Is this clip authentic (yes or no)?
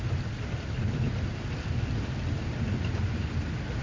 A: yes